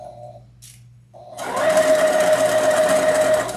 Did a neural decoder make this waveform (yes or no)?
no